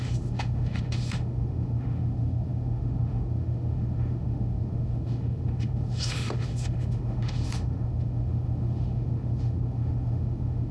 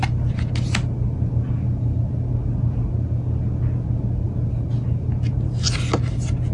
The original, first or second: second